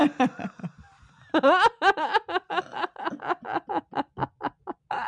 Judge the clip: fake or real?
real